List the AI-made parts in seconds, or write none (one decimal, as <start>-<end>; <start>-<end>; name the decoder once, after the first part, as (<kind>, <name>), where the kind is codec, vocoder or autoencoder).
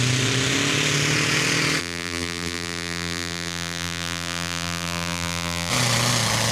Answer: 1.8-5.7 (vocoder, BigVGAN v2)